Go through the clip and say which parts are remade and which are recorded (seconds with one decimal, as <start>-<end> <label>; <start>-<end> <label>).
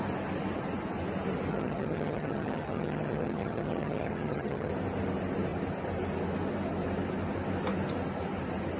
0.0-1.5 recorded; 1.5-4.7 remade; 4.7-8.8 recorded